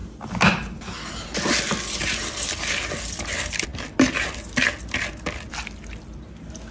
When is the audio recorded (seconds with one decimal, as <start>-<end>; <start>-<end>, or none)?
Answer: 0.0-6.7